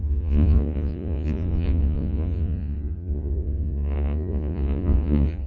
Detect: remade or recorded remade